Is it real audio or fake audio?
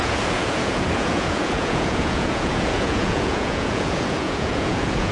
fake